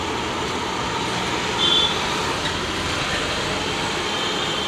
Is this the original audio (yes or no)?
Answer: yes